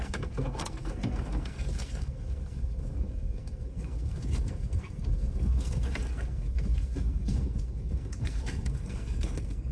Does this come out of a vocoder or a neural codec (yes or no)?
yes